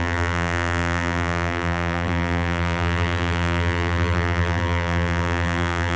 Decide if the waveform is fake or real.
fake